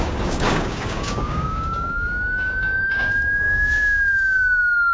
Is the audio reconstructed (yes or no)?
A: yes